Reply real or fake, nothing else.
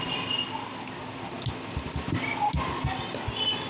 real